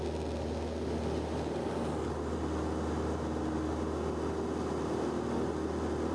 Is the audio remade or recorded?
recorded